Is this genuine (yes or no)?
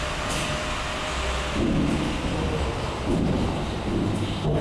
yes